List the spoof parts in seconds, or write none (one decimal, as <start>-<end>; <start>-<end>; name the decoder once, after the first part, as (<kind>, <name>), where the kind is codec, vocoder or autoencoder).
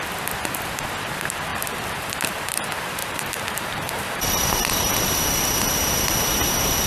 3.0-5.1 (vocoder, BigVGAN v2)